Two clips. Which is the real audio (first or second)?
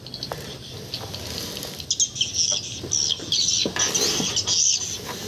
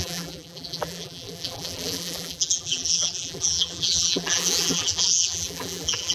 first